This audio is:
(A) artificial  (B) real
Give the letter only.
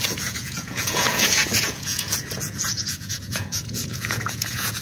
A